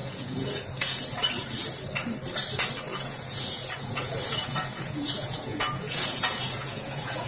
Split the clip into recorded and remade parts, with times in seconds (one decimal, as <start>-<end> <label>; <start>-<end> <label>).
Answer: 0.0-0.6 remade; 0.6-2.9 recorded; 2.9-7.3 remade